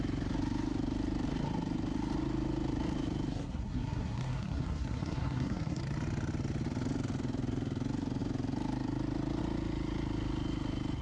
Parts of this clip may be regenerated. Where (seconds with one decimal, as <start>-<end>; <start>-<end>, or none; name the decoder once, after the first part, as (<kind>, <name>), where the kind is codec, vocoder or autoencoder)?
3.3-5.8 (codec, SNAC)